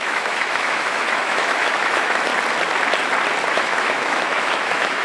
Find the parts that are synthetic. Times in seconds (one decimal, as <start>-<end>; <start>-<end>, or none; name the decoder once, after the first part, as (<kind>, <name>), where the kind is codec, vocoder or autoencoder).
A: 0.0-2.3 (autoencoder, DAC-VAE); 3.5-5.0